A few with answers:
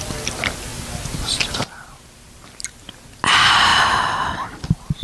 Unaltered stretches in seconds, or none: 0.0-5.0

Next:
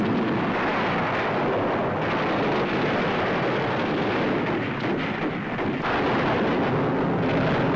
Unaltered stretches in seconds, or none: 0.0-7.8

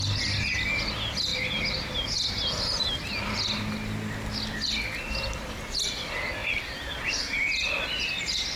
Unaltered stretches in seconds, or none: 0.0-6.4; 7.2-8.6

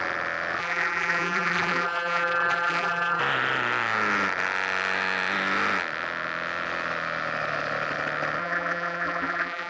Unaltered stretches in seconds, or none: 0.0-0.6; 3.2-8.4

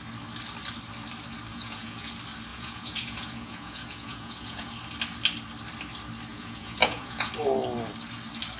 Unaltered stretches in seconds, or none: 0.0-1.5; 2.1-2.5; 4.7-6.3; 7.3-8.6